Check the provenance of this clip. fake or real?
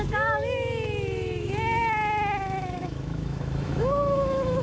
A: fake